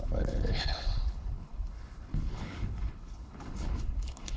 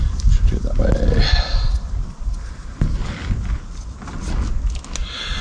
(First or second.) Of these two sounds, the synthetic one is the first